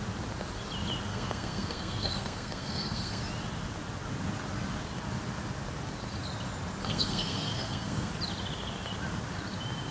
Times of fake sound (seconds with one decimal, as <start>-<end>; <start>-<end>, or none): 1.1-3.2; 6.8-8.1